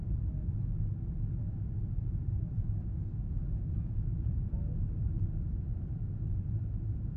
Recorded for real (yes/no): no